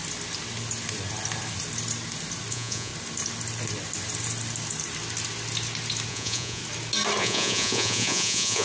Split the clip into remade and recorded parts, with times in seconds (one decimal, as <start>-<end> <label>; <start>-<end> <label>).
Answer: 0.0-2.5 recorded; 2.5-2.9 remade; 2.9-6.1 recorded; 6.1-6.6 remade; 6.6-7.2 recorded; 7.2-8.6 remade